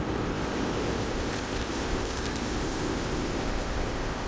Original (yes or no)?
no